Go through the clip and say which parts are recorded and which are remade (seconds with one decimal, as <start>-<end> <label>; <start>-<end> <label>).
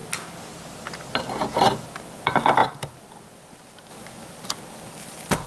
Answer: 0.0-5.5 recorded